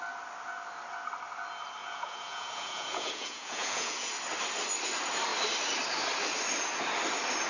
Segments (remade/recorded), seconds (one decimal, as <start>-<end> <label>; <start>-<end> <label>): 0.0-1.8 recorded; 1.8-4.1 remade; 4.1-7.5 recorded